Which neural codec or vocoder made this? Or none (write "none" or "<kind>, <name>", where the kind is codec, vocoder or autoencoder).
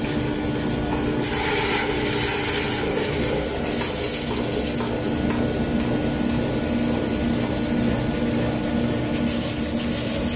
none